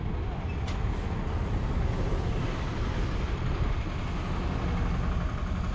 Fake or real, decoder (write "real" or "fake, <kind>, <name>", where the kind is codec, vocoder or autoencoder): real